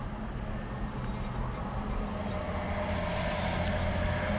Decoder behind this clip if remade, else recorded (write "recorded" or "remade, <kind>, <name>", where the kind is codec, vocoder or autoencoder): recorded